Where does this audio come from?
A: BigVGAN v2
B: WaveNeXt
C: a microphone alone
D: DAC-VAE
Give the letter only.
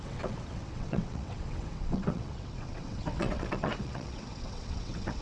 B